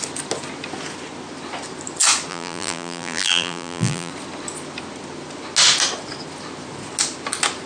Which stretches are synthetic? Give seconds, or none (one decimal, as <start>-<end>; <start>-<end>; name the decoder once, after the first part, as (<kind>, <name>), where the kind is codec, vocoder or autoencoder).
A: 2.3-4.1 (vocoder, BigVGAN v2)